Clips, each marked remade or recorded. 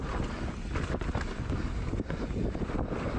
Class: recorded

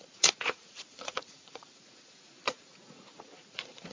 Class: remade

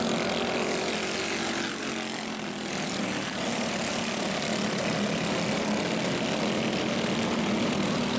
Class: recorded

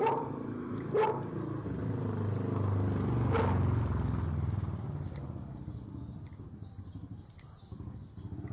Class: recorded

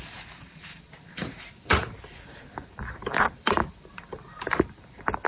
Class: remade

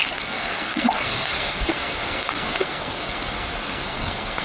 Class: remade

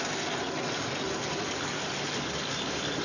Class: recorded